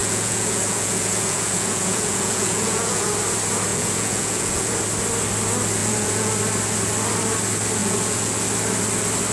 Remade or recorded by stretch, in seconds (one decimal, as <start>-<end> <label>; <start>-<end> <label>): 0.0-3.1 remade; 3.1-3.7 recorded; 3.7-4.7 remade; 4.7-5.8 recorded; 5.8-6.3 remade; 6.3-7.8 recorded; 7.8-8.3 remade; 8.3-9.3 recorded